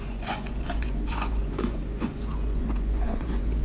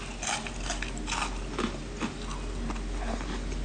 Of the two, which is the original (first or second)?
second